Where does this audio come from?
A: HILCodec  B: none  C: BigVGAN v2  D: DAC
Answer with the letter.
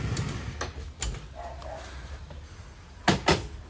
B